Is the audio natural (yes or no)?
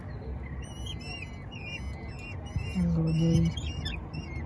yes